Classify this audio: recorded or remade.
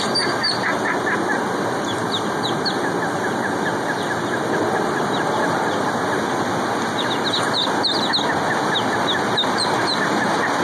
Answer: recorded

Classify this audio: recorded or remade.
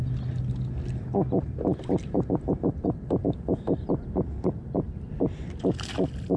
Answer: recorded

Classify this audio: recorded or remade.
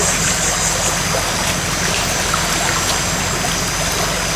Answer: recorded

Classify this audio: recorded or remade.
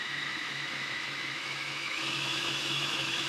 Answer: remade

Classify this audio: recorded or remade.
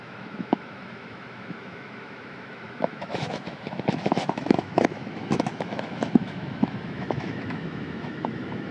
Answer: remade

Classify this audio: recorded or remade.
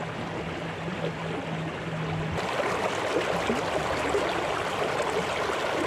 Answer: recorded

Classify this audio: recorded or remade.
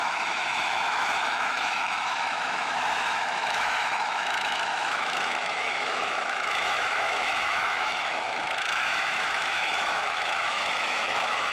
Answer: remade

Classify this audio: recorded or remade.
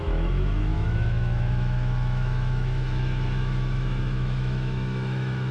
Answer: remade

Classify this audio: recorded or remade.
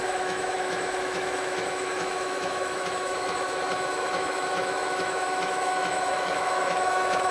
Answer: remade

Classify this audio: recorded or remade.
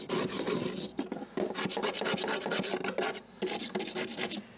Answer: recorded